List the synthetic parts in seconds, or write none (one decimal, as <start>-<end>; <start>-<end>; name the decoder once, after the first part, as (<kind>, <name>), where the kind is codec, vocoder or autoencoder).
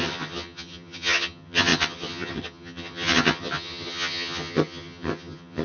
0.0-5.6 (vocoder, HiFi-GAN)